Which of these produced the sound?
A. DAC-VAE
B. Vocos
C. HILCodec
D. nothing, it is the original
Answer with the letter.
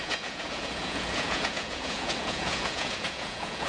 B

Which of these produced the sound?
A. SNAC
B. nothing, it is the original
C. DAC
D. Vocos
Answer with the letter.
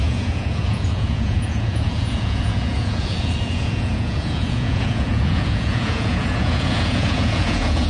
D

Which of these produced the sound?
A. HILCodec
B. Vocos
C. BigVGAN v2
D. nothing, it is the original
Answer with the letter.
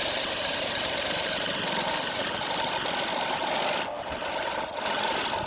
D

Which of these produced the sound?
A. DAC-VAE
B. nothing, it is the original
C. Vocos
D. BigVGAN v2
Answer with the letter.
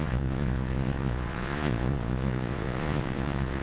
C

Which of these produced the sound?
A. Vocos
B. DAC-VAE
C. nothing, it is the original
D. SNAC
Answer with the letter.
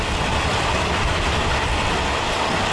C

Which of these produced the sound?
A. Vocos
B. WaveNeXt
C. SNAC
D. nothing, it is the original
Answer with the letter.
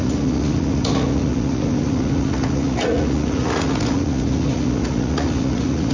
A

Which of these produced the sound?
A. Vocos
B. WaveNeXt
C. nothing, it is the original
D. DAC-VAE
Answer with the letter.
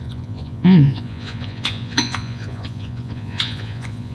A